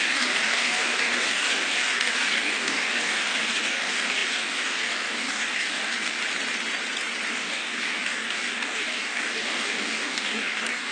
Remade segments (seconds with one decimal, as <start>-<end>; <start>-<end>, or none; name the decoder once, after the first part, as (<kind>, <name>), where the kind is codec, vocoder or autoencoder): 0.0-6.2 (codec, DAC); 7.3-10.9